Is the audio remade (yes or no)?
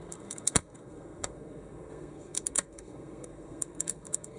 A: yes